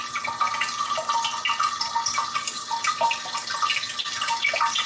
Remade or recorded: recorded